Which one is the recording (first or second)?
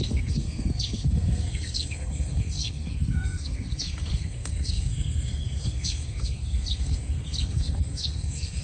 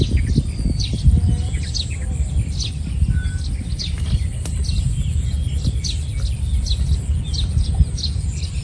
second